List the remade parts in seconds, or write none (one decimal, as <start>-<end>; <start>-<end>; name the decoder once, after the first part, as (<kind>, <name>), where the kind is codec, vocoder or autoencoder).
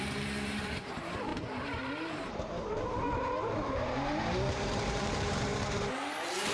0.0-5.5 (vocoder, BigVGAN v2)